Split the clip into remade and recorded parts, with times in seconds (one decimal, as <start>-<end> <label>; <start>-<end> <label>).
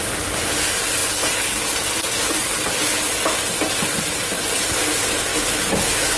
0.0-5.3 recorded; 5.3-6.2 remade